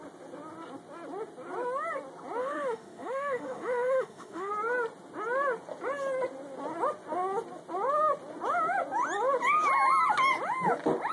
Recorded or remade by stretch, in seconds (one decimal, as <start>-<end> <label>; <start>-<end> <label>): 0.0-2.4 recorded; 2.4-4.5 remade; 4.5-11.1 recorded